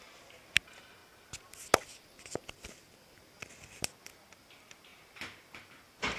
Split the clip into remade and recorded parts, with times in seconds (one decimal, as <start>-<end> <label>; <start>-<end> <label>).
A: 0.0-6.2 recorded